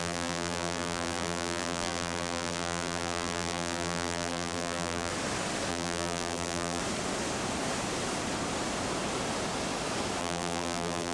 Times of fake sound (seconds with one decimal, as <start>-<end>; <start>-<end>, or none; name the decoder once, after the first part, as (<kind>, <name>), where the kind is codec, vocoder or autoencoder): 0.0-5.1 (vocoder, BigVGAN v2); 5.7-6.8; 10.2-11.1